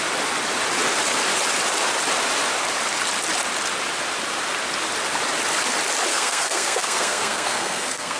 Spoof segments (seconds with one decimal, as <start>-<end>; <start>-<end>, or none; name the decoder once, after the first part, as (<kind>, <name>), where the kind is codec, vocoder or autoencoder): 6.1-8.2 (codec, SNAC)